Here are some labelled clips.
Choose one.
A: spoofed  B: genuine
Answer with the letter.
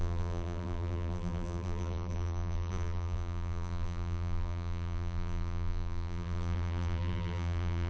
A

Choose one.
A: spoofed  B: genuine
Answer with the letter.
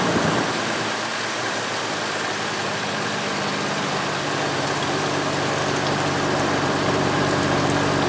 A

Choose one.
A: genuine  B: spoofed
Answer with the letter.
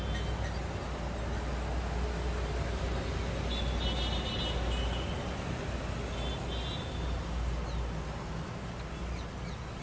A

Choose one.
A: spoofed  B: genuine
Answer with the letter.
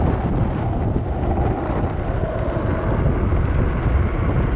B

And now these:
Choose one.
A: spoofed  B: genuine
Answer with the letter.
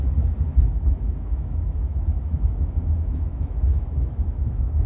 A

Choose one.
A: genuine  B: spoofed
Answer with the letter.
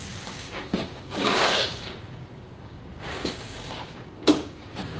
B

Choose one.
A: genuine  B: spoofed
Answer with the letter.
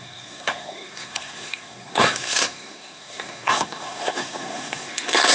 B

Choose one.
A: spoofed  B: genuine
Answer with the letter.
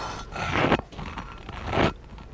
B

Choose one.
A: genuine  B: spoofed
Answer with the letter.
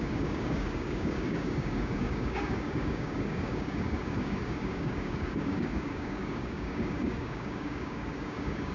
B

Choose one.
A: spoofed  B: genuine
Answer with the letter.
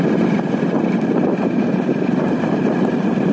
B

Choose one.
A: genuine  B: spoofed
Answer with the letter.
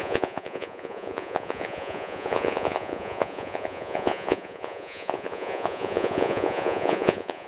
B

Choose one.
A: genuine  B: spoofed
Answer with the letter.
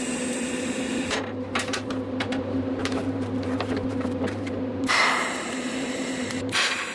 B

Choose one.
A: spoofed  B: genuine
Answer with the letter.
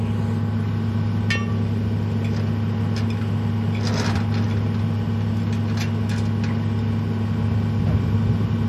B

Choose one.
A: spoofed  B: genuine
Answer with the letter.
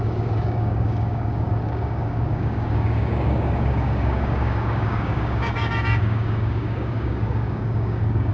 A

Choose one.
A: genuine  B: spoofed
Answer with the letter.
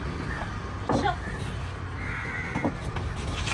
A